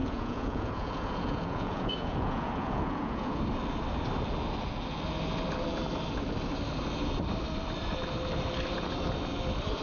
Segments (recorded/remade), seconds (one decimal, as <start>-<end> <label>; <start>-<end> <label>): 0.0-3.4 remade; 3.4-9.8 recorded